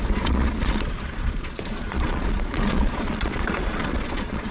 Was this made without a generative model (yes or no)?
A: no